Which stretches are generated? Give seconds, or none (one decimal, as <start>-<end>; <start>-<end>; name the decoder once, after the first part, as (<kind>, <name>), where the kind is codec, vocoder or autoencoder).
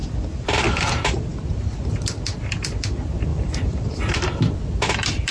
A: 0.0-0.8 (vocoder, BigVGAN v2); 3.3-4.4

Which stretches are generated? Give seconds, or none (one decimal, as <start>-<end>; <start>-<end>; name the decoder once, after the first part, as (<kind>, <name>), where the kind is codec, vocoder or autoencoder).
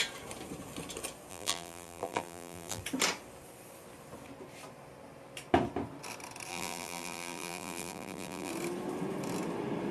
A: 1.3-2.8 (vocoder, BigVGAN v2); 6.5-8.5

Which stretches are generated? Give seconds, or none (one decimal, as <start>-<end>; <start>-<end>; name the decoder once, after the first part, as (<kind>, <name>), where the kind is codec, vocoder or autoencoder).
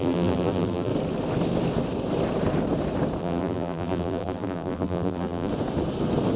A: 0.0-0.9 (vocoder, BigVGAN v2); 3.2-5.5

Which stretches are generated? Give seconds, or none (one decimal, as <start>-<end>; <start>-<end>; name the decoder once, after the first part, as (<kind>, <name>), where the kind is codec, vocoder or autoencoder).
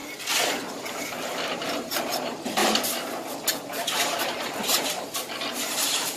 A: 0.7-2.6 (vocoder, BigVGAN v2); 4.8-6.2